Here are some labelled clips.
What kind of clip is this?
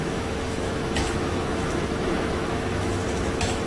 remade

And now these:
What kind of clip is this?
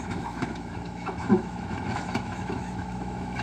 remade